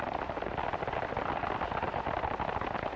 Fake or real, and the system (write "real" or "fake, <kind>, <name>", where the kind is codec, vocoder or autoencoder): real